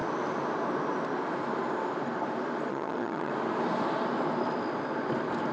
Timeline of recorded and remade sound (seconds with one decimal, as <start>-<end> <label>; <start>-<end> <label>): 0.0-2.7 recorded; 2.7-3.3 remade; 3.3-5.5 recorded